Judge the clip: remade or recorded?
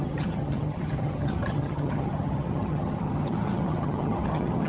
remade